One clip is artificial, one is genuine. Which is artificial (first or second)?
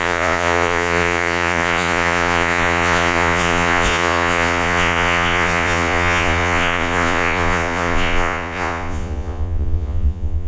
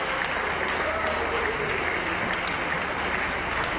first